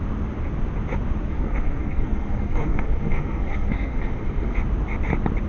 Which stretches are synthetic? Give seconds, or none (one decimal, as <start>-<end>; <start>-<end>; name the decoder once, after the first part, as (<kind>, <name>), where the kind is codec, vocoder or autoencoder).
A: 1.3-4.6 (codec, SNAC)